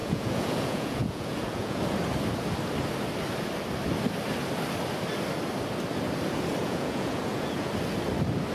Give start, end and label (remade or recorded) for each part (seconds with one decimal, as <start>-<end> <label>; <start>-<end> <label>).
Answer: 0.0-1.8 remade; 1.8-6.6 recorded; 6.6-7.7 remade; 7.7-8.5 recorded